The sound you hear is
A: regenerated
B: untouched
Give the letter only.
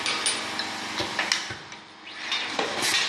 B